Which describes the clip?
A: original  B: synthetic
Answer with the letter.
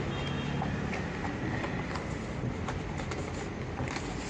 A